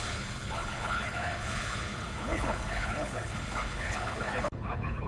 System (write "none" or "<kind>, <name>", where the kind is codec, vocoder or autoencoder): codec, HILCodec